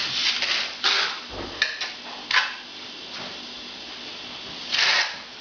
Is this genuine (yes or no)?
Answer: yes